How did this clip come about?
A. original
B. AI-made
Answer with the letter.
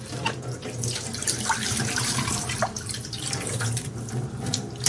B